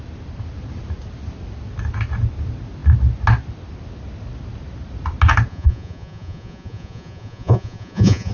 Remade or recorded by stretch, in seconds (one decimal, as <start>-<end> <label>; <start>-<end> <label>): 0.0-5.5 recorded; 5.5-8.3 remade